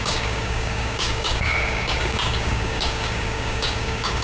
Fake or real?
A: fake